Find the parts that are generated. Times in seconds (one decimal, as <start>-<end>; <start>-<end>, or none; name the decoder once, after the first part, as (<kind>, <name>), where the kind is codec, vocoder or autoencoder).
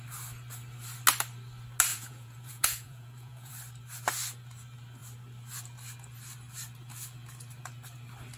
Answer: 1.9-3.5 (vocoder, Vocos)